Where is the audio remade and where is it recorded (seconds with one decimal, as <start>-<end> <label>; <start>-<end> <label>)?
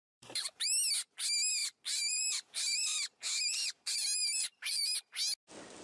0.0-0.7 remade; 0.7-1.6 recorded; 1.6-5.1 remade; 5.1-5.8 recorded